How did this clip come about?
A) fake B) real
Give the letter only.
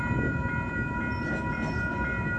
B